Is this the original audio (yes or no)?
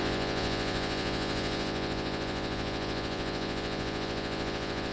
no